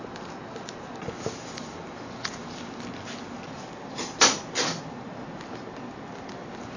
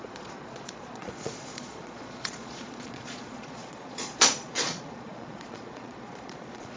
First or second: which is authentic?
first